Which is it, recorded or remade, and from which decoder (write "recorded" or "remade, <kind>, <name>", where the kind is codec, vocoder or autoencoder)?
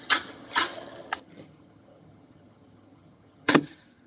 remade, vocoder, HiFi-GAN